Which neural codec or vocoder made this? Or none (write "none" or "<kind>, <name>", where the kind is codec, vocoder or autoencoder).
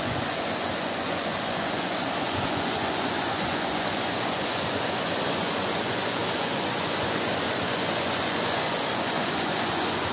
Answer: vocoder, Vocos